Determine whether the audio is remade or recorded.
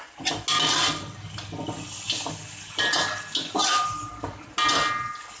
recorded